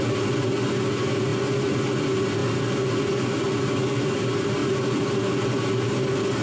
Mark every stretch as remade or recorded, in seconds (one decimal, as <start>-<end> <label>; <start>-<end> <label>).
0.0-6.4 recorded